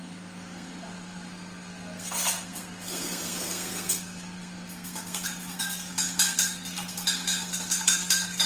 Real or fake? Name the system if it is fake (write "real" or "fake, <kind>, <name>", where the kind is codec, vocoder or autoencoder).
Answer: fake, codec, SNAC